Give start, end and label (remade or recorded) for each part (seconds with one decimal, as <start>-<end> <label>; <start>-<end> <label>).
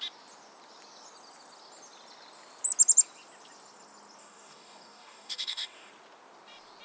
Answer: 0.0-4.2 recorded; 4.2-5.9 remade; 5.9-6.8 recorded